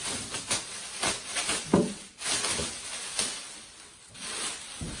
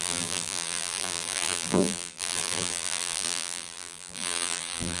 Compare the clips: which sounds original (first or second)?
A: first